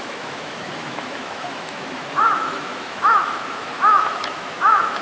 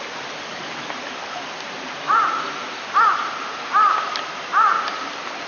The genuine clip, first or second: second